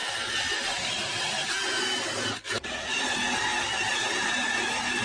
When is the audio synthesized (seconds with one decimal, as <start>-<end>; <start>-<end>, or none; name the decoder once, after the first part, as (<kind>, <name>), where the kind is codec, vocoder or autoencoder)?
none